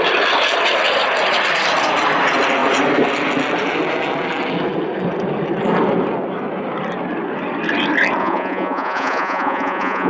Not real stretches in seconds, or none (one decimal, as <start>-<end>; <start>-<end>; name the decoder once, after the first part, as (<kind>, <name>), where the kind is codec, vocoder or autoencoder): 8.2-10.1 (vocoder, Vocos)